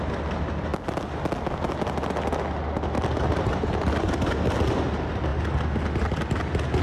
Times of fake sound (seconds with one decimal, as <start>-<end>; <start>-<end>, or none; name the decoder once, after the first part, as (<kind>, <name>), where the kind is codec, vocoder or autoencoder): none

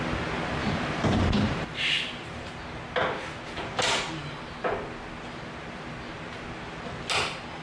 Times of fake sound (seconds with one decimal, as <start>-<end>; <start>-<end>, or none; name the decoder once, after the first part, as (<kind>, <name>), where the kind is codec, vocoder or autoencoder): 0.6-2.5 (vocoder, BigVGAN v2)